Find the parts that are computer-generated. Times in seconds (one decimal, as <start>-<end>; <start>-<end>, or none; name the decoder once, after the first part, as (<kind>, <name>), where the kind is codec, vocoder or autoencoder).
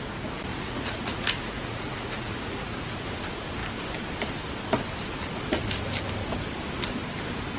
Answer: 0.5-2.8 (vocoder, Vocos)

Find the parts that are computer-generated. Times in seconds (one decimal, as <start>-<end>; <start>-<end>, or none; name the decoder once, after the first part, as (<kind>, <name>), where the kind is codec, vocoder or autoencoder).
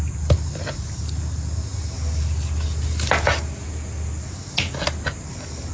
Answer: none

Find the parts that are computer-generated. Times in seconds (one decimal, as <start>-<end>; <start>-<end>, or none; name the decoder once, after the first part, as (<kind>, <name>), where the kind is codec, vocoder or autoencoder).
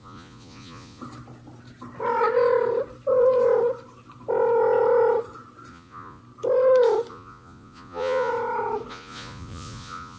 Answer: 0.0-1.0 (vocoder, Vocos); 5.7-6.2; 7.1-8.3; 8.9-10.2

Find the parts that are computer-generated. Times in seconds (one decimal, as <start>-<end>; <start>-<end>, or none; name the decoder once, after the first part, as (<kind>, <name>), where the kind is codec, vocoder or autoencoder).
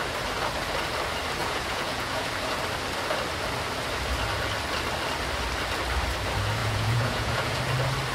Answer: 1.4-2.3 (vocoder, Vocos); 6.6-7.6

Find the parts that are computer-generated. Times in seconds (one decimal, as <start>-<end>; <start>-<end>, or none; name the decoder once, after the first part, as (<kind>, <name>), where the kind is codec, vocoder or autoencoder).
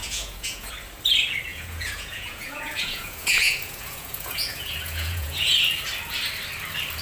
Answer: 0.0-0.7 (vocoder, Vocos); 1.5-5.5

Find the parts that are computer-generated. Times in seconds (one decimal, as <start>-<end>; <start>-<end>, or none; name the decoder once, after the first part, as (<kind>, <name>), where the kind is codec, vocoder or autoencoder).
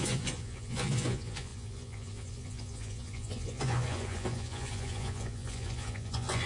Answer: 0.0-6.5 (vocoder, Vocos)